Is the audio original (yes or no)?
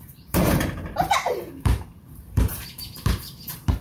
no